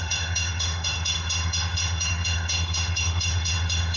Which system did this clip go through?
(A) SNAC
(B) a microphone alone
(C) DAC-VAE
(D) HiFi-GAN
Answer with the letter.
C